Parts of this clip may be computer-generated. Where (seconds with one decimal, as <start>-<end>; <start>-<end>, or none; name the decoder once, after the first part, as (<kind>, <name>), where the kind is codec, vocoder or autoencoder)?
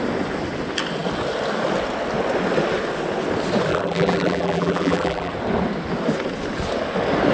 3.7-5.3 (vocoder, BigVGAN v2)